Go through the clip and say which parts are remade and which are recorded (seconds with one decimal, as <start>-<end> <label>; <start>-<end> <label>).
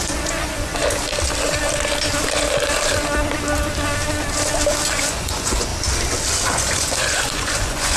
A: 0.0-0.8 remade; 0.8-4.9 recorded; 4.9-5.7 remade; 5.7-6.5 recorded; 6.5-8.0 remade